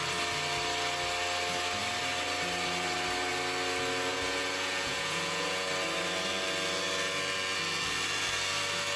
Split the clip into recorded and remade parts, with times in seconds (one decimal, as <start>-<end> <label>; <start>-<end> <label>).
0.0-4.1 recorded; 4.1-5.7 remade; 5.7-9.0 recorded